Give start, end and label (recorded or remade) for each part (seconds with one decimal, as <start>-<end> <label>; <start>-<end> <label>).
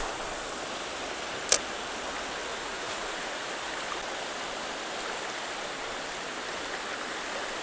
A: 0.0-2.5 recorded; 2.5-3.5 remade; 3.5-7.6 recorded